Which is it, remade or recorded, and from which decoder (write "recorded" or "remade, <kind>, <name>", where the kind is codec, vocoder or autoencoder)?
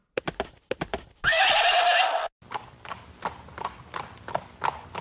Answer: recorded